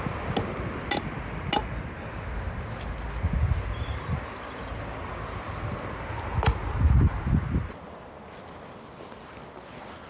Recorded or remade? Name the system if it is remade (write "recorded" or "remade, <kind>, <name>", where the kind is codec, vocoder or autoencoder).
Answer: recorded